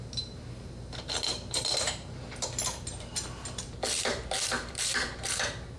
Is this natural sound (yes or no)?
no